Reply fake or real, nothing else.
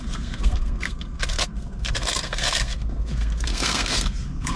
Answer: fake